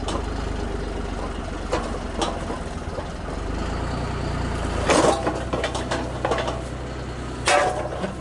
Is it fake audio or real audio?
real